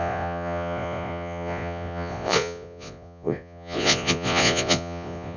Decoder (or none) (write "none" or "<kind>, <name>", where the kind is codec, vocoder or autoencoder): vocoder, Vocos